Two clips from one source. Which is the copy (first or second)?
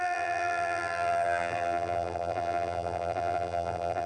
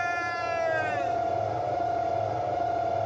first